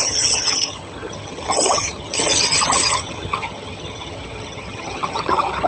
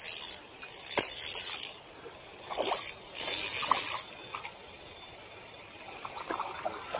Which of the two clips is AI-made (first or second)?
first